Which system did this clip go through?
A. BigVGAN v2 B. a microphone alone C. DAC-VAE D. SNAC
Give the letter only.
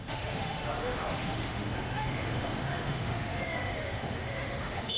C